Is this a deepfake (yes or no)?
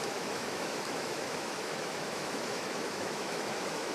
yes